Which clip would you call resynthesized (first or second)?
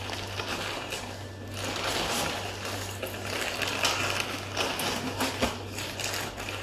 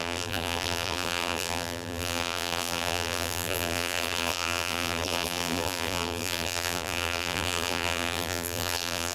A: second